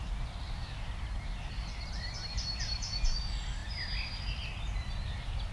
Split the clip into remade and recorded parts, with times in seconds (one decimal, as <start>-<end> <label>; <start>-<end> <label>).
0.0-5.5 recorded